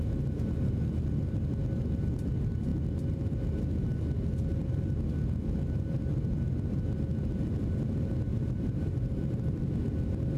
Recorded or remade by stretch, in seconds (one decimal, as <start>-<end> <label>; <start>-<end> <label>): 0.0-8.3 recorded; 8.3-9.6 remade; 9.6-10.4 recorded